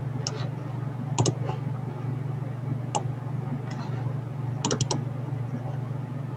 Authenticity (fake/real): real